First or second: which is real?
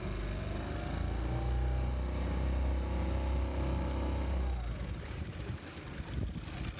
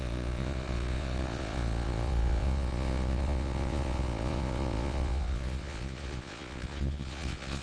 first